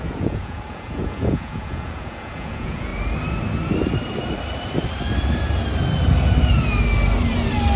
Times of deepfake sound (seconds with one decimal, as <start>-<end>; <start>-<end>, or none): 0.0-2.9